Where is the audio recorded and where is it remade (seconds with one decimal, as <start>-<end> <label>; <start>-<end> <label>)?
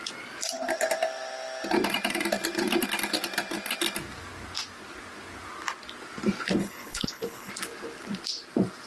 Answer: 0.0-6.6 recorded; 6.6-7.5 remade; 7.5-8.9 recorded